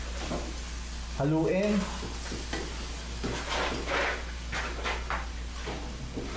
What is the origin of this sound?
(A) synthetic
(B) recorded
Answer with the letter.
B